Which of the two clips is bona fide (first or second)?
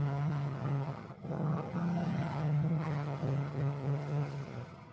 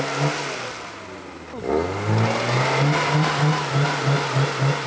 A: second